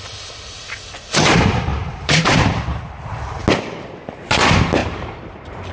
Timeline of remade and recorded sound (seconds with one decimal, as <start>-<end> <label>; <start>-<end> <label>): 0.0-1.7 recorded; 1.7-2.8 remade; 2.8-4.8 recorded; 4.8-5.7 remade